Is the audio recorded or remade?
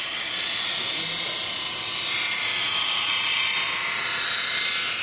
recorded